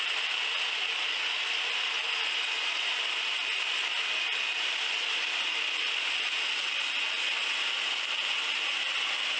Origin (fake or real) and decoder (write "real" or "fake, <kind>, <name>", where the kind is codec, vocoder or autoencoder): real